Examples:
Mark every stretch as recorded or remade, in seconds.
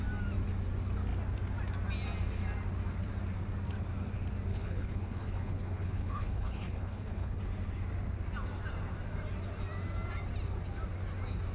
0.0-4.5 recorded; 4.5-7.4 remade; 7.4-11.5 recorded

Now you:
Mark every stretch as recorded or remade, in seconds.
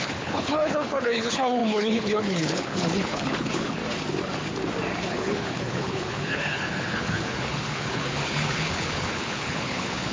0.0-3.8 remade; 3.8-5.1 recorded; 5.1-10.1 remade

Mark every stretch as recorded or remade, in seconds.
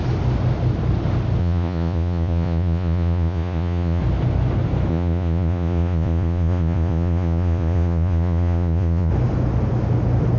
0.0-1.4 recorded; 1.4-4.0 remade; 4.0-4.9 recorded; 4.9-9.1 remade; 9.1-10.4 recorded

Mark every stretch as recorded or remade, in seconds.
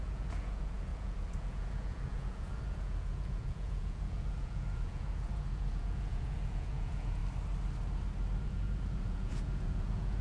0.0-7.2 remade; 7.2-8.4 recorded; 8.4-10.2 remade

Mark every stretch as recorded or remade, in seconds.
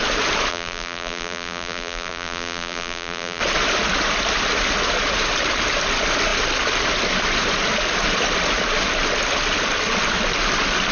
0.0-0.5 recorded; 0.5-3.4 remade; 3.4-10.9 recorded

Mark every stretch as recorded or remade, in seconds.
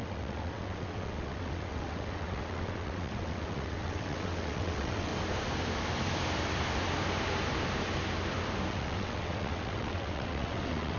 0.0-5.1 remade; 5.1-8.7 recorded; 8.7-11.0 remade